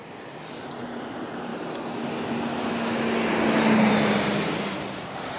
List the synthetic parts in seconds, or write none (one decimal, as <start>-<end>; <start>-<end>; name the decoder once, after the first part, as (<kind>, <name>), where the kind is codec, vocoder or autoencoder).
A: none